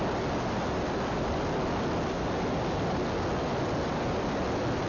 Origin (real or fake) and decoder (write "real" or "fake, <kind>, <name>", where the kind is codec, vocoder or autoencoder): real